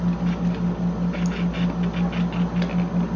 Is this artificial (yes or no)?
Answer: no